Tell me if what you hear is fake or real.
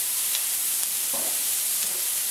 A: fake